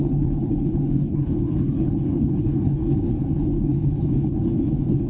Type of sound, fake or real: fake